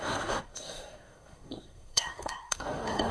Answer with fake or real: fake